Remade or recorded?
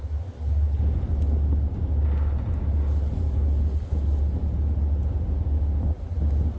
recorded